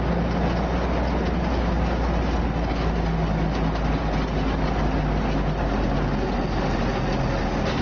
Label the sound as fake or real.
real